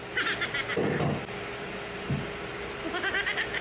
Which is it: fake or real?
real